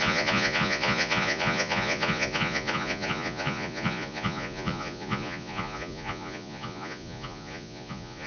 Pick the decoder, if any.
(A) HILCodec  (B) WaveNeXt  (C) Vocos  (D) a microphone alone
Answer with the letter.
C